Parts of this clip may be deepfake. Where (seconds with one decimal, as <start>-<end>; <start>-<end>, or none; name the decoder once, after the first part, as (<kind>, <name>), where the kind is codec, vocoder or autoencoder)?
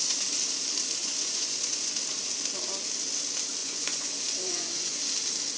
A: 1.0-1.9 (vocoder, Vocos); 3.6-5.0